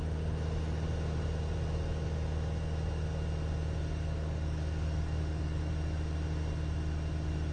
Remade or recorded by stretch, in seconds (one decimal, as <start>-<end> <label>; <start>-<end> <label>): 0.0-3.8 recorded; 3.8-5.7 remade; 5.7-7.5 recorded

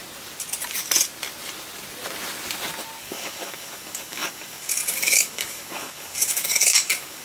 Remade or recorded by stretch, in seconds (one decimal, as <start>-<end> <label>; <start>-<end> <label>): 0.0-3.0 recorded; 3.0-7.2 remade

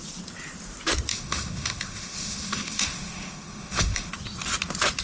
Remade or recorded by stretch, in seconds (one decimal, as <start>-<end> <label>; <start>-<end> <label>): 0.0-1.1 recorded; 1.1-4.1 remade; 4.1-5.0 recorded

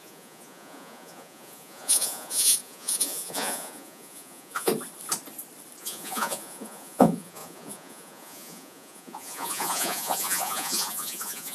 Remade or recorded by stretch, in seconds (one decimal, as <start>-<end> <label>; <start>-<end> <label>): 0.0-4.7 remade; 4.7-5.8 recorded; 5.8-11.5 remade